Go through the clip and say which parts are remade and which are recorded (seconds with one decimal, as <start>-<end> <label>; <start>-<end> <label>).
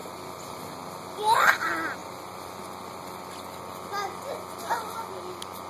0.0-0.5 remade; 0.5-2.0 recorded; 2.0-5.3 remade; 5.3-5.7 recorded